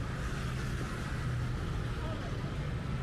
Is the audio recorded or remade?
recorded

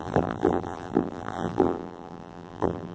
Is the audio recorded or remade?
remade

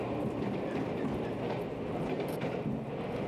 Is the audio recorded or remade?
recorded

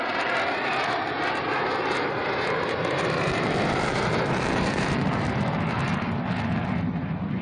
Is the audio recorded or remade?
remade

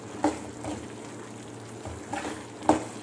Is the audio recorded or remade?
recorded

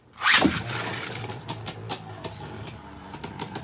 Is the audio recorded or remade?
remade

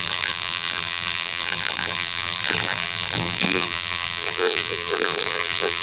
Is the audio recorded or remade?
remade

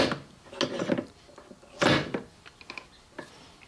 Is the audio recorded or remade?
recorded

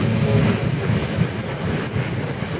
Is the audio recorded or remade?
recorded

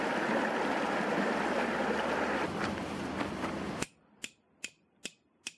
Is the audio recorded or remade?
remade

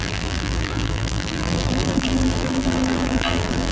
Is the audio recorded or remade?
remade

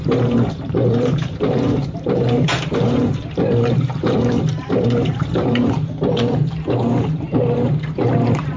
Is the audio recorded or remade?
remade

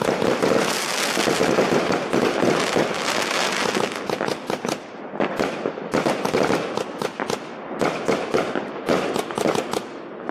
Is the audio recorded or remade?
recorded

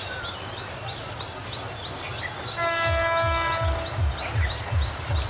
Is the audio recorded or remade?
recorded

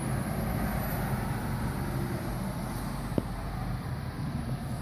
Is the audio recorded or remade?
recorded